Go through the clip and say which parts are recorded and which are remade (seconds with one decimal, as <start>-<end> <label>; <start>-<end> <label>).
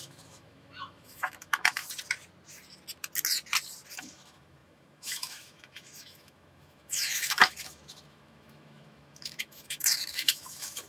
0.0-1.8 remade; 1.8-4.0 recorded; 4.0-10.9 remade